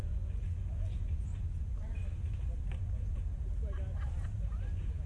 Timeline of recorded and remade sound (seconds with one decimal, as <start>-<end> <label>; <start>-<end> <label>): 0.0-1.3 remade; 1.3-4.4 recorded; 4.4-5.1 remade